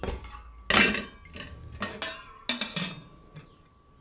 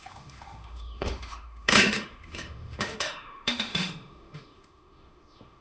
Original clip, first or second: first